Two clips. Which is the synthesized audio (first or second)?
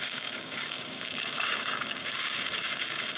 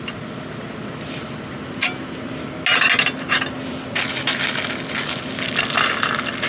first